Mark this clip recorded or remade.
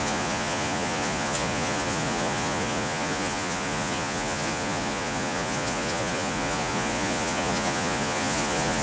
remade